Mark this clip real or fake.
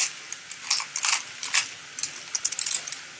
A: real